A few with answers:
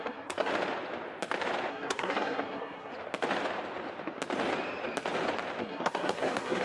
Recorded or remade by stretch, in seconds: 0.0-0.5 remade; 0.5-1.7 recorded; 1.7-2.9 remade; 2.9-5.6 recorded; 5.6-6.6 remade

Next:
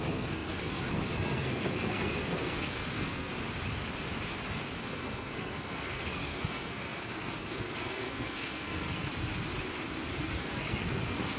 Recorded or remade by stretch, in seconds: 0.0-3.3 remade; 3.3-4.8 recorded; 4.8-9.1 remade; 9.1-10.2 recorded; 10.2-11.4 remade

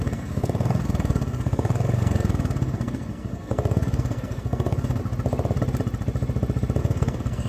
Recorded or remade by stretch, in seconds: 0.0-5.0 remade; 5.0-6.8 recorded; 6.8-7.5 remade

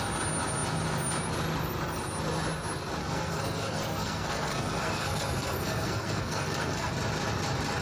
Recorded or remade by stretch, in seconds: 0.0-3.0 recorded; 3.0-6.9 remade; 6.9-7.8 recorded

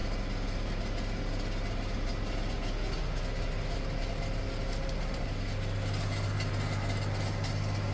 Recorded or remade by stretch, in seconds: 0.0-7.9 recorded

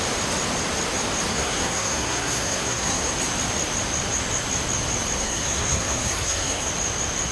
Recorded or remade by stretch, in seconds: 0.0-1.3 recorded; 1.3-3.1 remade; 3.1-5.2 recorded; 5.2-6.7 remade; 6.7-7.3 recorded

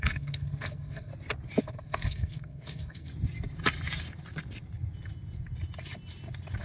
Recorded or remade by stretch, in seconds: 0.0-1.1 remade; 1.1-1.6 recorded; 1.6-3.1 remade; 3.1-6.6 recorded